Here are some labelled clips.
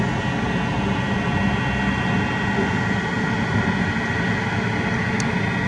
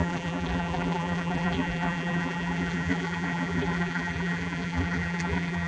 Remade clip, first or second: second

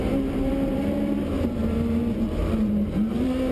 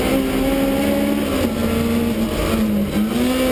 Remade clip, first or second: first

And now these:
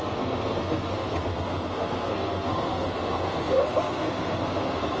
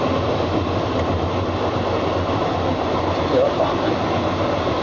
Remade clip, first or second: first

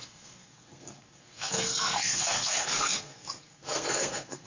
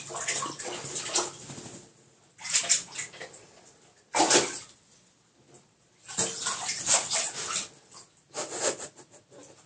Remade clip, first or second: first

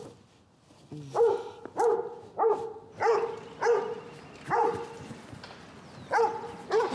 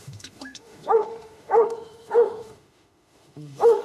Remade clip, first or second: second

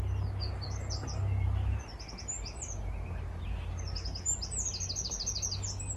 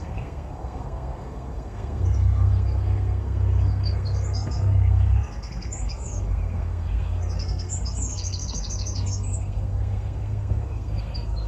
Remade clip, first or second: second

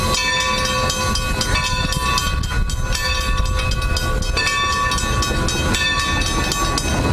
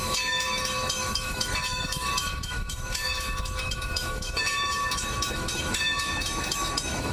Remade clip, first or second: second